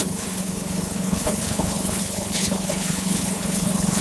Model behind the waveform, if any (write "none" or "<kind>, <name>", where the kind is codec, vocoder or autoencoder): codec, HILCodec